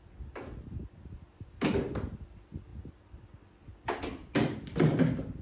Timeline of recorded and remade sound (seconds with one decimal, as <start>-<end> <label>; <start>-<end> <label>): 0.0-5.4 recorded